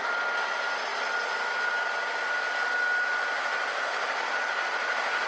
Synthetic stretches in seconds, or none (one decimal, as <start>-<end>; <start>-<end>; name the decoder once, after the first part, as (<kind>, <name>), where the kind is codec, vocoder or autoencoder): none